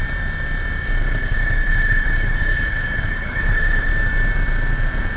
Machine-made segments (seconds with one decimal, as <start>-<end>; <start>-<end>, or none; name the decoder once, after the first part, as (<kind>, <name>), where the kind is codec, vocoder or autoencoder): 1.0-3.9 (codec, HILCodec)